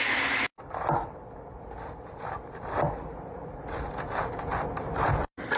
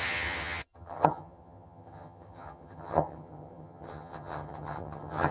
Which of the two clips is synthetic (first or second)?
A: second